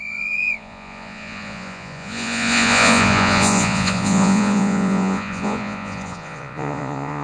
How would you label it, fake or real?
fake